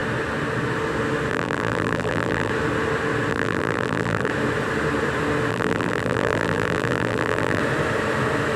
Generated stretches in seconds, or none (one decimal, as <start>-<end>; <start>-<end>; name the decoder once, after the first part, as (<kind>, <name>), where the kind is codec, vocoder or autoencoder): 1.3-2.5 (vocoder, BigVGAN v2); 3.3-4.3; 5.5-7.6